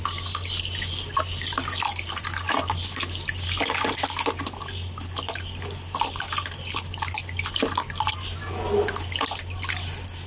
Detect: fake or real real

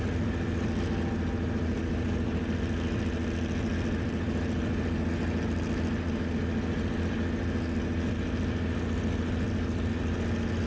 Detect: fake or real real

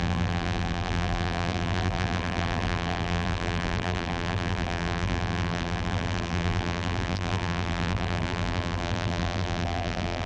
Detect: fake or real fake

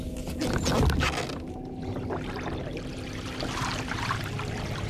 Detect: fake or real real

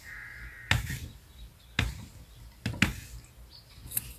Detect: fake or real real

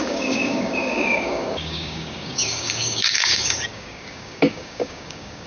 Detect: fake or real fake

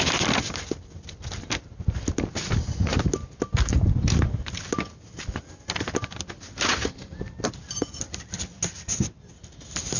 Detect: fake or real real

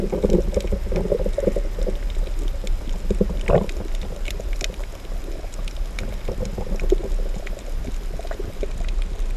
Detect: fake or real real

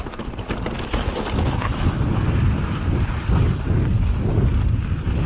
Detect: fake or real real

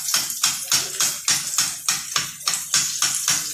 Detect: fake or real real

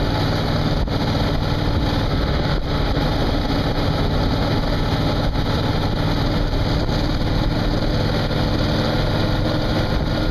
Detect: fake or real real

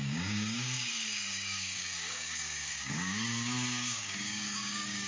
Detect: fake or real fake